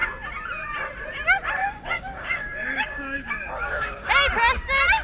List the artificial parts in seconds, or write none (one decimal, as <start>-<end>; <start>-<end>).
1.6-4.1